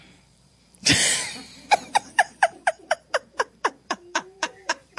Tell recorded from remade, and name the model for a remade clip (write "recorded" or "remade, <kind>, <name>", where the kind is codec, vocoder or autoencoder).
remade, vocoder, BigVGAN v2